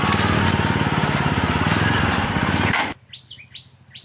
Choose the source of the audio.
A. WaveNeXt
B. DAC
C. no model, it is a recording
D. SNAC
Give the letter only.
C